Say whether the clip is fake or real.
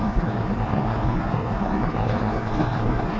fake